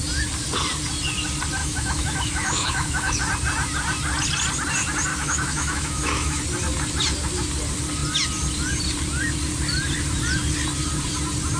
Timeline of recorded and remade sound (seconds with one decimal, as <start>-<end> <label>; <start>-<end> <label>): 0.0-1.6 recorded; 1.6-3.2 remade; 3.2-5.1 recorded; 5.1-6.4 remade; 6.4-11.6 recorded